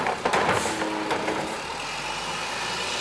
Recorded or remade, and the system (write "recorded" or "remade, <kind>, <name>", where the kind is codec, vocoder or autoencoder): recorded